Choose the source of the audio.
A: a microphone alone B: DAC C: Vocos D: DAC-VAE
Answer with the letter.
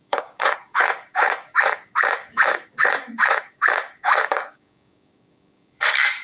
B